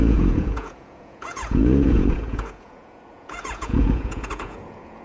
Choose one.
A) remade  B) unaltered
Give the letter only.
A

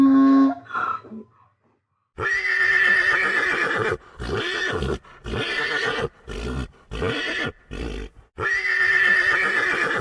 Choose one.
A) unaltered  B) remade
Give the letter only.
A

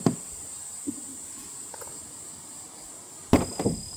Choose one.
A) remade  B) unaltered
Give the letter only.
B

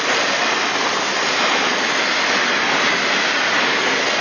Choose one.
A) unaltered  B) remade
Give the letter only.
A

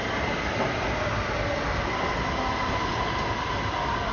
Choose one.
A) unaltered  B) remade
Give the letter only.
A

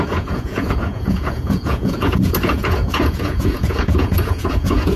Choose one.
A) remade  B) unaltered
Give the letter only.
A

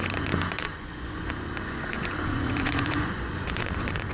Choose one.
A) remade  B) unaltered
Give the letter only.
A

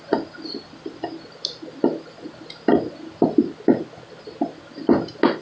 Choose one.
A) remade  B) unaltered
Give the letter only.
B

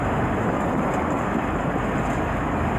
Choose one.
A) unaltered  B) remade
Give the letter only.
A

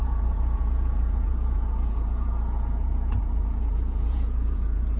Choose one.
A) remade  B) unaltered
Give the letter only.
A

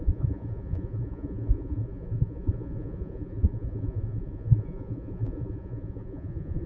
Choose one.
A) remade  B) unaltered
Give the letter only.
A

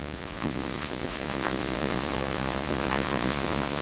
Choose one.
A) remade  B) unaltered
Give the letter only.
A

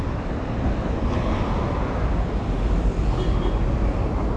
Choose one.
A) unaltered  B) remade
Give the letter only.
A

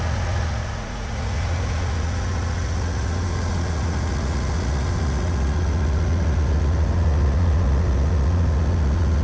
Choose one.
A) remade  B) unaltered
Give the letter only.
A